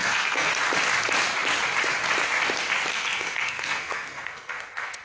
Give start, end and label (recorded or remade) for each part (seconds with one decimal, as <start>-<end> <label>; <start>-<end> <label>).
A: 0.0-0.5 remade; 0.5-2.9 recorded; 2.9-5.0 remade